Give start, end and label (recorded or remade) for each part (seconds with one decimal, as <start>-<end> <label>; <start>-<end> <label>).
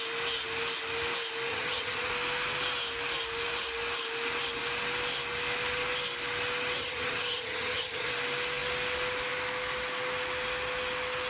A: 0.0-1.5 recorded; 1.5-2.1 remade; 2.1-6.8 recorded; 6.8-8.1 remade; 8.1-11.3 recorded